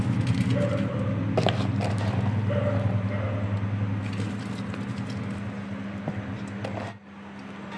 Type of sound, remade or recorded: recorded